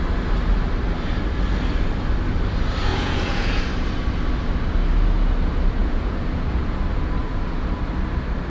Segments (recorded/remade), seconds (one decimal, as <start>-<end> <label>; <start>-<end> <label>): 0.0-2.9 recorded; 2.9-3.6 remade; 3.6-5.8 recorded; 5.8-6.8 remade; 6.8-7.2 recorded; 7.2-7.8 remade; 7.8-8.5 recorded